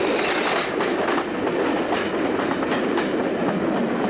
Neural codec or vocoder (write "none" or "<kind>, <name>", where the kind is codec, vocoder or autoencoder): none